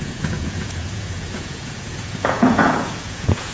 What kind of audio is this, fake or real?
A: fake